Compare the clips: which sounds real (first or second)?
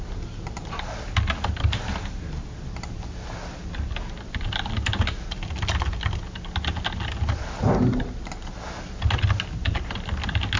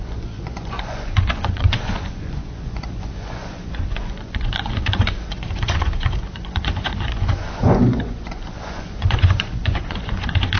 first